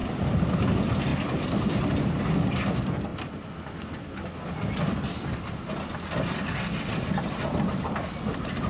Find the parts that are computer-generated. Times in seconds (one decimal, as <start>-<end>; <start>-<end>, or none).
none